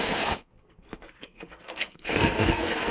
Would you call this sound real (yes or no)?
no